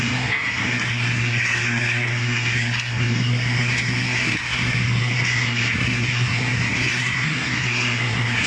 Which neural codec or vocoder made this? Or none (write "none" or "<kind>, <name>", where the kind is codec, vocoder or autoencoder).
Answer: codec, SNAC